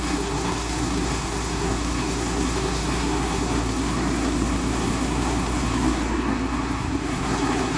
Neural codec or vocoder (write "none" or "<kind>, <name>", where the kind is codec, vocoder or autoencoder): codec, SNAC